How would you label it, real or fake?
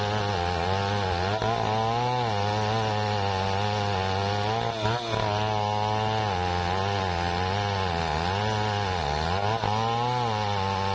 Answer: real